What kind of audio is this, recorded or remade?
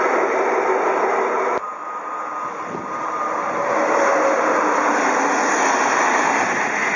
recorded